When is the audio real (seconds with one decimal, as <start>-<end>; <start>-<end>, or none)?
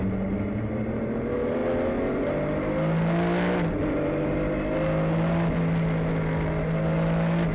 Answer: 0.0-7.5